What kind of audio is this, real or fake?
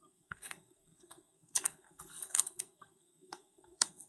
fake